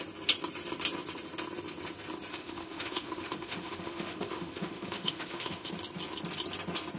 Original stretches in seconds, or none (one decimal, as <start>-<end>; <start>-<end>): 0.0-2.3; 5.7-7.0